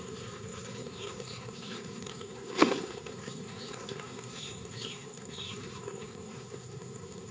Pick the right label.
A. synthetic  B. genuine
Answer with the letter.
A